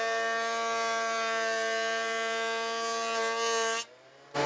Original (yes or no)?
yes